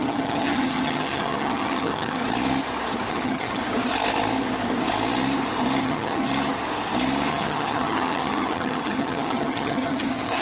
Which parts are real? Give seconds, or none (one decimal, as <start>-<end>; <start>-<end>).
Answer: 2.2-3.1; 3.6-5.8; 6.3-7.3